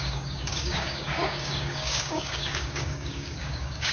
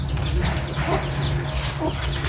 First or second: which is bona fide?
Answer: second